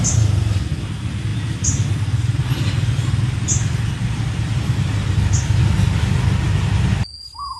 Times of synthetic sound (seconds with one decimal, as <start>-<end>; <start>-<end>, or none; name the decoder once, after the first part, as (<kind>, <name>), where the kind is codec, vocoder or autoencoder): none